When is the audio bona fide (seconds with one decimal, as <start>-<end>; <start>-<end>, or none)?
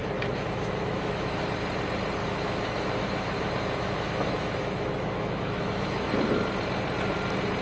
1.4-2.2; 6.1-7.6